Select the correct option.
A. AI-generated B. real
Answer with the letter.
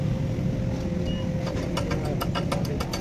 B